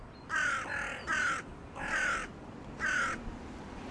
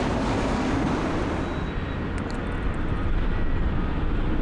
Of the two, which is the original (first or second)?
second